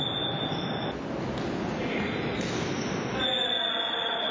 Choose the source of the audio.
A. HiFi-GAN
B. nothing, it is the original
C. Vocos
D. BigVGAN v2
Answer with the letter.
B